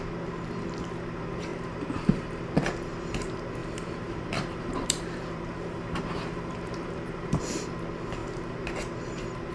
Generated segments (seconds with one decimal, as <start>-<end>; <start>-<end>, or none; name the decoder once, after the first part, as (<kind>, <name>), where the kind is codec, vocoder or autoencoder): 1.5-2.5 (vocoder, BigVGAN v2); 3.6-7.4